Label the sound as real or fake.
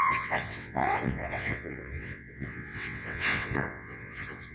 fake